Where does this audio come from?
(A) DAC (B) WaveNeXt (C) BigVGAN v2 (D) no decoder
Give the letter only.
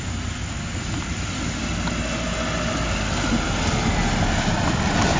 D